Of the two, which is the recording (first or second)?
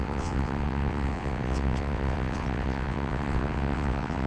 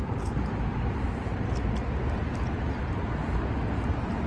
second